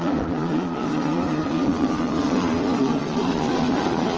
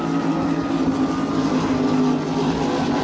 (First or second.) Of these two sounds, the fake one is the first